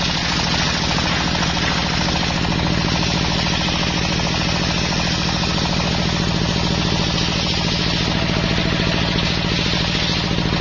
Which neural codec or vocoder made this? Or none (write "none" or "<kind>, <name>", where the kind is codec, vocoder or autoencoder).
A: none